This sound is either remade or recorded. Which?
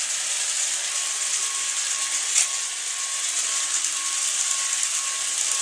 recorded